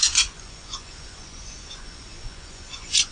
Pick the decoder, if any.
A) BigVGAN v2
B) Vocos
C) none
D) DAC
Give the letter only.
B